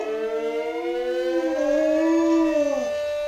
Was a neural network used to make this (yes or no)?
no